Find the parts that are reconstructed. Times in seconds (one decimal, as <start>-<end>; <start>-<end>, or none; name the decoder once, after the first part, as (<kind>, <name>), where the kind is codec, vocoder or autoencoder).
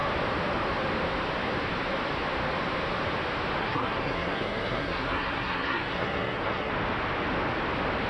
3.6-6.7 (codec, SNAC)